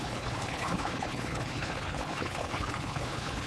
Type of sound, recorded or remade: remade